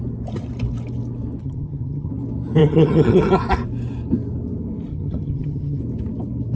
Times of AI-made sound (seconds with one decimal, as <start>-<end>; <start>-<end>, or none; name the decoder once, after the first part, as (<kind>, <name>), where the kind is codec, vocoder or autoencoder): 1.4-2.1 (vocoder, HiFi-GAN); 2.6-3.3; 4.9-5.8